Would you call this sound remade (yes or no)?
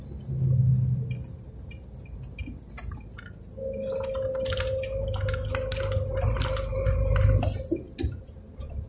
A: no